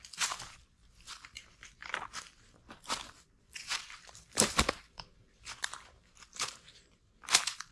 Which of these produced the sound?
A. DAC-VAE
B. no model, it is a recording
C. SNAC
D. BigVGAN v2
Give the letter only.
D